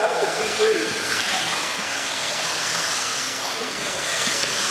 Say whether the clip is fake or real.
fake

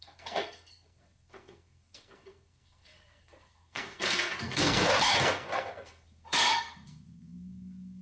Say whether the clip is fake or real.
fake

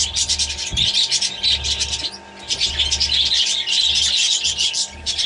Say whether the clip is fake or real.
real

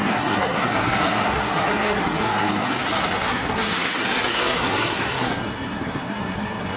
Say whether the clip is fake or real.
fake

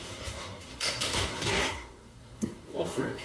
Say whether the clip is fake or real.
fake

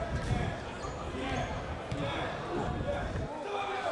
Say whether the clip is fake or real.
real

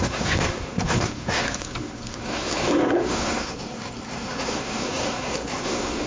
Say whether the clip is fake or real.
fake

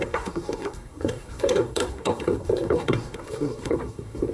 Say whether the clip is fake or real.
fake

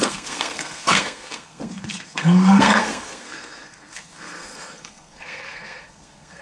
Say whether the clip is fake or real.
fake